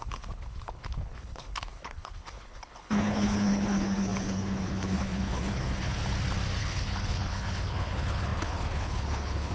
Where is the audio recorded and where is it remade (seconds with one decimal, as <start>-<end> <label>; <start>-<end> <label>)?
0.0-6.0 remade; 6.0-6.6 recorded; 6.6-9.5 remade